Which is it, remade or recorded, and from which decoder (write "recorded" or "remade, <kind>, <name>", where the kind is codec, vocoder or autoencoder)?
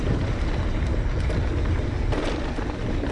recorded